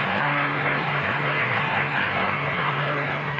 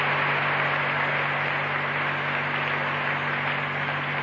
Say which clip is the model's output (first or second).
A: first